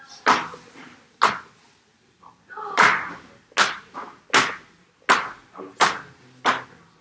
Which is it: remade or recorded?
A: recorded